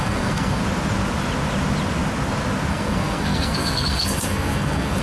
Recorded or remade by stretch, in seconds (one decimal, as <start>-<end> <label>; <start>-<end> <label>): 0.0-0.6 remade; 0.6-2.7 recorded; 2.7-5.0 remade